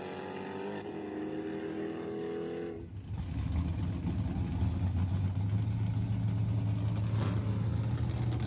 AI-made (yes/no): no